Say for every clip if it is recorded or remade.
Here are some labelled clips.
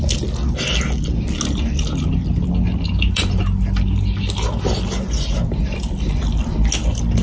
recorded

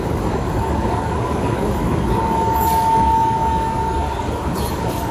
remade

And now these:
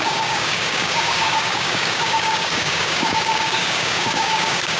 remade